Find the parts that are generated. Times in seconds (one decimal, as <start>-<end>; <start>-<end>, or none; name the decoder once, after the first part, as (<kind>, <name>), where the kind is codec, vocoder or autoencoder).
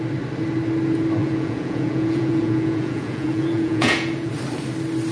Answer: 1.2-4.3 (vocoder, Vocos)